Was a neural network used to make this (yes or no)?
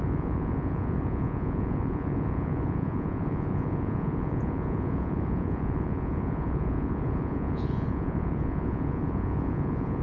yes